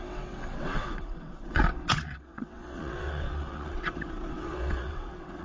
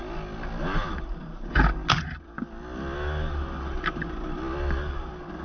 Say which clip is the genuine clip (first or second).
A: second